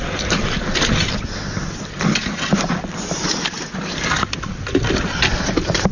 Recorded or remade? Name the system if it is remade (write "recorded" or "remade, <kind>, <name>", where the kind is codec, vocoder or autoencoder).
recorded